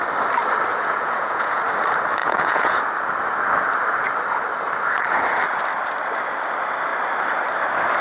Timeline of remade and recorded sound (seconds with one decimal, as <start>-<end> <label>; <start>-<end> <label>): 0.0-0.7 recorded; 0.7-1.6 remade; 1.6-2.2 recorded; 2.2-2.8 remade; 2.8-8.0 recorded